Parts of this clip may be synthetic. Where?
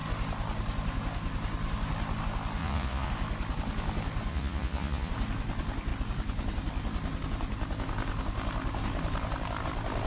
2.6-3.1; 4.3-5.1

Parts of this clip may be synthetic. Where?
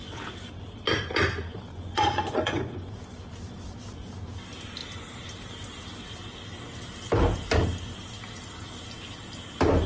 1.7-2.9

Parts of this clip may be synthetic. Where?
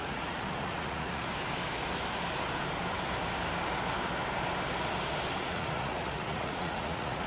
0.0-1.3; 5.4-7.3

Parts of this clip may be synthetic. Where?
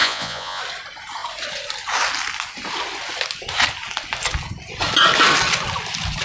0.0-0.6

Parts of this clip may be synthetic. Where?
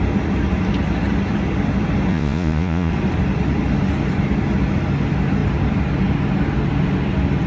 2.1-2.9